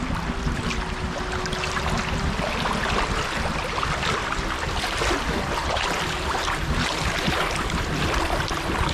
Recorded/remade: recorded